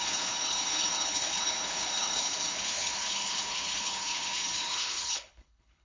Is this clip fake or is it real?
fake